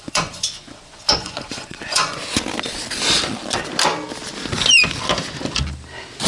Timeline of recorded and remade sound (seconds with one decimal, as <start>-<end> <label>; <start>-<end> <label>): 0.0-2.2 remade; 2.2-6.3 recorded